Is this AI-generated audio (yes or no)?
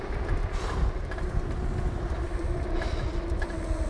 yes